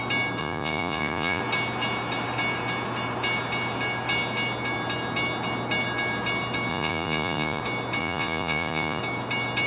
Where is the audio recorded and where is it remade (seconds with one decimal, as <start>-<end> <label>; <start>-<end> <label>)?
0.0-0.4 recorded; 0.4-1.4 remade; 1.4-6.7 recorded; 6.7-7.6 remade; 7.6-8.0 recorded; 8.0-9.0 remade; 9.0-9.7 recorded